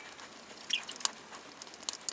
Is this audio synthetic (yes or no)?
no